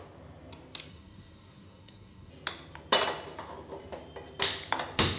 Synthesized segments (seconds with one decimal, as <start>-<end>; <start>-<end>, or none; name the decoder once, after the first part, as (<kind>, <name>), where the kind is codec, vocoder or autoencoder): 0.9-2.3 (codec, SNAC)